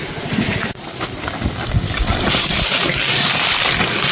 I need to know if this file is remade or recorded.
remade